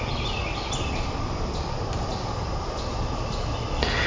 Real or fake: real